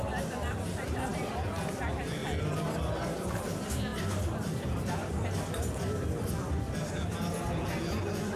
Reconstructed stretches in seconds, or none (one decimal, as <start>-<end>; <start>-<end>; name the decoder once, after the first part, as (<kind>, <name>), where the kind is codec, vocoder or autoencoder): none